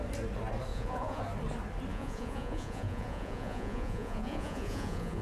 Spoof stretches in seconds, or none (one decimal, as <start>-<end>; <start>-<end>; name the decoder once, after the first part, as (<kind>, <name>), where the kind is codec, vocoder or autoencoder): 0.7-1.2 (vocoder, Vocos); 1.9-5.2